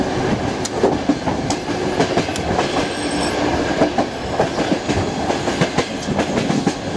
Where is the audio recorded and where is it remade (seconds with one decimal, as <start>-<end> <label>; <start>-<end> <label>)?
0.0-2.3 recorded; 2.3-2.8 remade; 2.8-3.5 recorded; 3.5-6.4 remade; 6.4-7.0 recorded